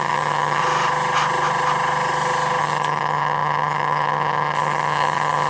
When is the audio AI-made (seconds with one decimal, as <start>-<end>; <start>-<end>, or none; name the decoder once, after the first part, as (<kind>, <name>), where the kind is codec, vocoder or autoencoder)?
0.0-0.6 (vocoder, HiFi-GAN); 2.6-5.5